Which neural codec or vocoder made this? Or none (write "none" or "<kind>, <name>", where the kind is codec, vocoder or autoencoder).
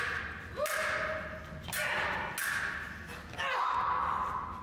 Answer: none